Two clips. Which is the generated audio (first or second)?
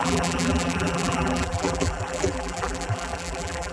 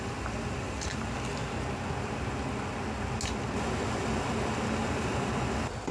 first